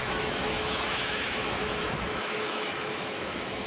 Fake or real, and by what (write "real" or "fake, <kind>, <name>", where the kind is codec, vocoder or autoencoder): fake, autoencoder, DAC-VAE